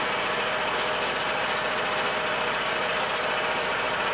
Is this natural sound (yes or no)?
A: yes